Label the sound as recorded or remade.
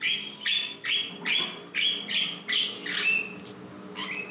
recorded